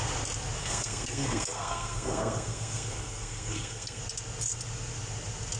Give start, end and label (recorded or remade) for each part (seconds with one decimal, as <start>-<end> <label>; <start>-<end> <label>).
0.0-0.6 recorded; 0.6-4.0 remade; 4.0-5.6 recorded